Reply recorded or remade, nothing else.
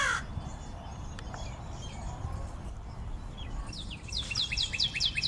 remade